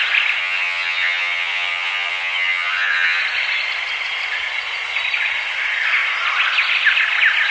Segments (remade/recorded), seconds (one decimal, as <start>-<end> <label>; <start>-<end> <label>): 0.0-0.4 recorded; 0.4-3.2 remade; 3.2-7.5 recorded